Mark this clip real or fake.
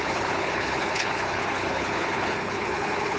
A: fake